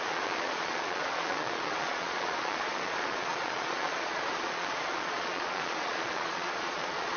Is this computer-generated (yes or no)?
yes